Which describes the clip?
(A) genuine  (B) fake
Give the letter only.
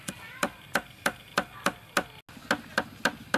A